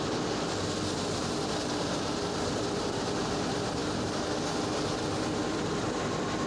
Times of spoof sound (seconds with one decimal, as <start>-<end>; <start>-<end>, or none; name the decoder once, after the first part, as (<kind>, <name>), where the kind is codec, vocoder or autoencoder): none